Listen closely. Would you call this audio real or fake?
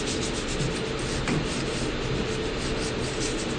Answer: real